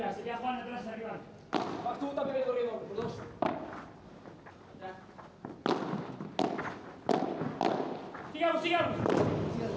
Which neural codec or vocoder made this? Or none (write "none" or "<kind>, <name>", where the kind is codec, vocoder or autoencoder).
none